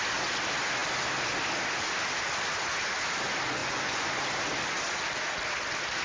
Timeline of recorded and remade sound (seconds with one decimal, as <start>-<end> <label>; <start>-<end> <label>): 0.0-3.6 recorded; 3.6-4.2 remade; 4.2-6.0 recorded